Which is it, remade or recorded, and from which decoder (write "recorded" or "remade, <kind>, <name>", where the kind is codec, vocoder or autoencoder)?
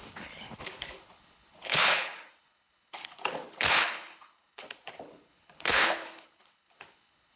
remade, codec, HILCodec